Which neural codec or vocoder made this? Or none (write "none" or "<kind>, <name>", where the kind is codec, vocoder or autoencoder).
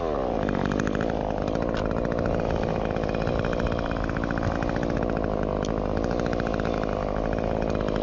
none